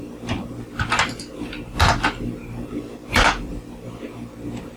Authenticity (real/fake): real